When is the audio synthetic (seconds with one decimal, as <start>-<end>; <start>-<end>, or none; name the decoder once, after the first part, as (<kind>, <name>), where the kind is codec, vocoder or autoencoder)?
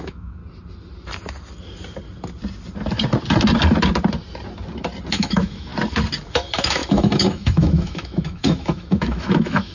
0.0-0.4 (autoencoder, DAC-VAE); 5.1-5.7; 6.3-9.7